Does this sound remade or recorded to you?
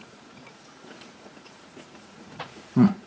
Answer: remade